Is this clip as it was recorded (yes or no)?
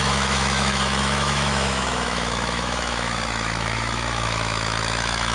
no